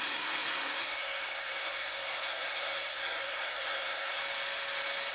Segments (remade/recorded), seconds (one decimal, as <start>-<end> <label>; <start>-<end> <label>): 0.0-4.2 remade; 4.2-5.1 recorded